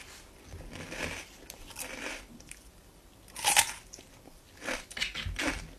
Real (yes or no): yes